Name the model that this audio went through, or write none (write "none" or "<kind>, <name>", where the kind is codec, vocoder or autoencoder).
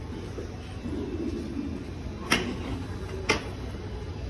none